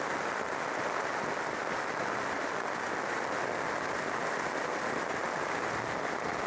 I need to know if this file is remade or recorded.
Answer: recorded